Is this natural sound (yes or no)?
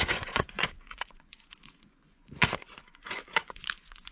no